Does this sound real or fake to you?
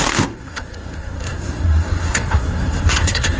fake